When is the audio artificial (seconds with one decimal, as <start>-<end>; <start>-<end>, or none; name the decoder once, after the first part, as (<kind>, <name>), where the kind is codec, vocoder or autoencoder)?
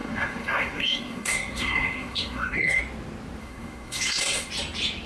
0.0-2.8 (codec, SNAC); 3.4-4.5